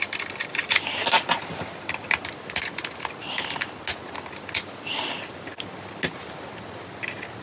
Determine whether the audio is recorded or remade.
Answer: recorded